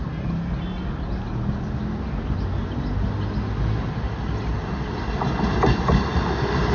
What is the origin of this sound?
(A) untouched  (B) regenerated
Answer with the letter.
A